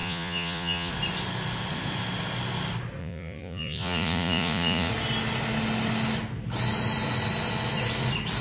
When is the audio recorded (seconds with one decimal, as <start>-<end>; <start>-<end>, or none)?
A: 0.9-3.0; 4.9-8.4